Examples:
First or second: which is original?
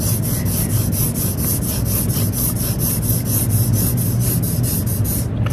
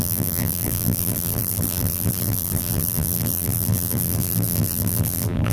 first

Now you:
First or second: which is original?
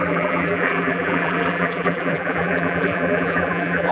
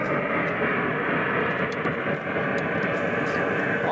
second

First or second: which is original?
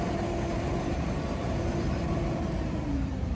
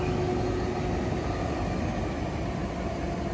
second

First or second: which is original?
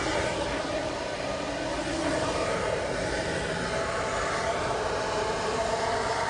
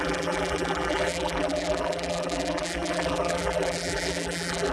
first